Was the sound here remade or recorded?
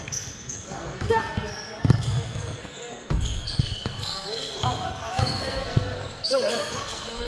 remade